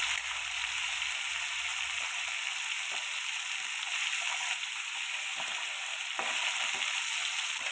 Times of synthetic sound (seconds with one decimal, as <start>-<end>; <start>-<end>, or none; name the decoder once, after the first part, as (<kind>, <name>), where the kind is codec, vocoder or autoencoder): none